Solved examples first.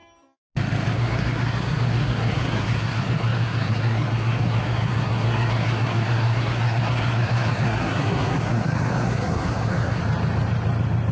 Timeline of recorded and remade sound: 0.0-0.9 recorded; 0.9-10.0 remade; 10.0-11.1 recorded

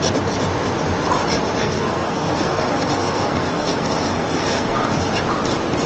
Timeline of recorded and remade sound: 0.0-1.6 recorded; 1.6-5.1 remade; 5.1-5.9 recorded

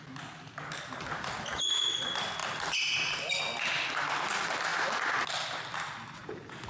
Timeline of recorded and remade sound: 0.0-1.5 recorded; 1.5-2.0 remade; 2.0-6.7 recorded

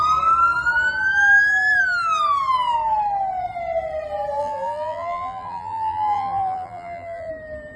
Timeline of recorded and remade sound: 0.0-4.4 recorded; 4.4-7.3 remade; 7.3-7.8 recorded

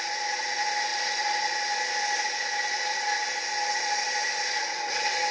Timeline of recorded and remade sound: 0.0-5.3 recorded